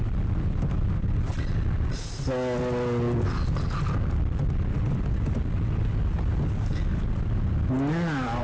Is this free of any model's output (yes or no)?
yes